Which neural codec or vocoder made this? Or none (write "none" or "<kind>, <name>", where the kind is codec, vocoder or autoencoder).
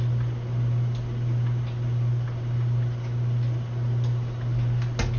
none